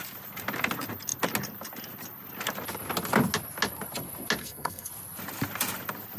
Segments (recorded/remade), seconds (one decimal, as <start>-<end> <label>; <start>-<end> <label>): 0.0-4.4 recorded; 4.4-4.9 remade; 4.9-6.2 recorded